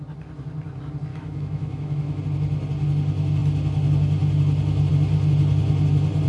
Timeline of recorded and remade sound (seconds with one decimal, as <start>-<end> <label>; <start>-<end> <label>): 0.0-1.1 recorded; 1.1-2.2 remade; 2.2-6.3 recorded